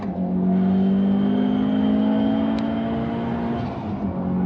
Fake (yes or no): no